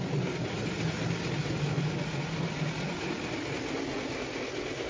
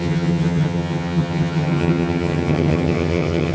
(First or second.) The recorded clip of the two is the first